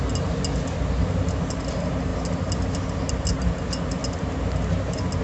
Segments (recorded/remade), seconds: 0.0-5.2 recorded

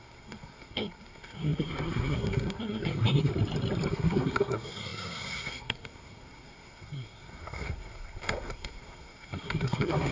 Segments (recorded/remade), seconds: 0.0-3.3 remade; 3.3-3.9 recorded; 3.9-10.1 remade

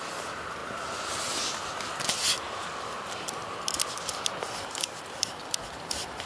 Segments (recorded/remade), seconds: 0.0-0.6 remade; 0.6-4.4 recorded; 4.4-6.3 remade

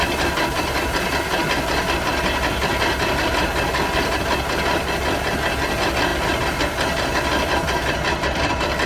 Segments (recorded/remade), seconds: 0.0-8.9 recorded

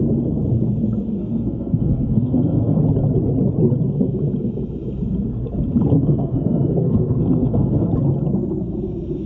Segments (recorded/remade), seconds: 0.0-1.2 recorded; 1.2-2.8 remade; 2.8-5.9 recorded; 5.9-7.9 remade; 7.9-9.3 recorded

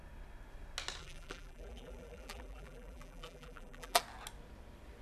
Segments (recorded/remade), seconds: 0.0-1.0 recorded; 1.0-4.0 remade; 4.0-5.0 recorded